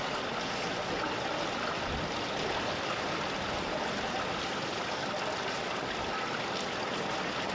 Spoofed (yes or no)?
no